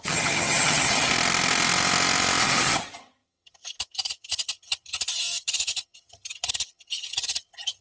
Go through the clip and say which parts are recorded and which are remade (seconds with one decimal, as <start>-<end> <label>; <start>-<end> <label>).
0.0-1.1 remade; 1.1-2.4 recorded; 2.4-7.8 remade